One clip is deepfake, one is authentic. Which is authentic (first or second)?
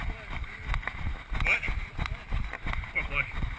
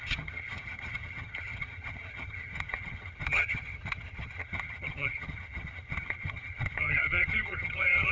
first